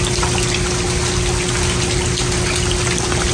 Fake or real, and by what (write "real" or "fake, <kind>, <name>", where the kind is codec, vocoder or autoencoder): real